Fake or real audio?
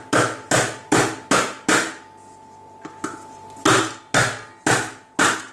real